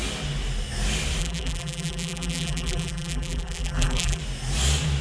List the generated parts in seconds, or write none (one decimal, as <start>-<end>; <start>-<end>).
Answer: 1.2-4.2